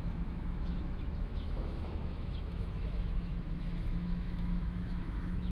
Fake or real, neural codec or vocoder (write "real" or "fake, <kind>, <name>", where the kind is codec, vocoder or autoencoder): fake, autoencoder, DAC-VAE